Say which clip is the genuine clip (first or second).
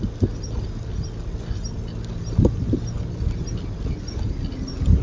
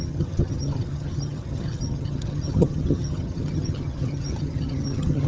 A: first